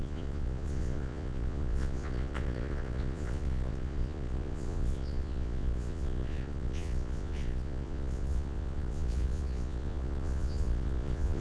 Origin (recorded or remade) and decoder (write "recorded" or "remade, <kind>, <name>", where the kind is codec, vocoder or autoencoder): remade, vocoder, Vocos